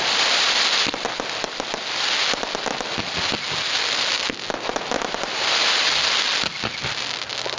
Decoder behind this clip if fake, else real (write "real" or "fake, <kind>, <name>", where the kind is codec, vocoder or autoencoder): real